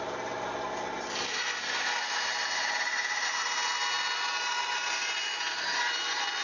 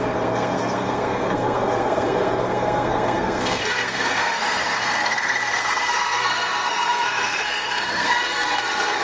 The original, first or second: first